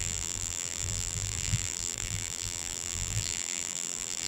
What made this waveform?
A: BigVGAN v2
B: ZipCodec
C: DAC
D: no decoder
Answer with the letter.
A